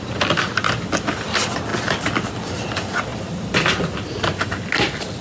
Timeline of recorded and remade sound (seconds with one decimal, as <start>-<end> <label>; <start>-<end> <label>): 0.0-5.2 recorded